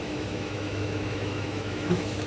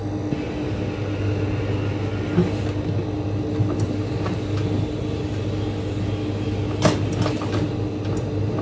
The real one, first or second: second